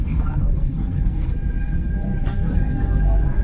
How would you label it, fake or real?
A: fake